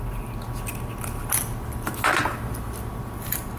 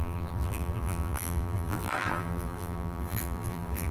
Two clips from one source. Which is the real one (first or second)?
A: first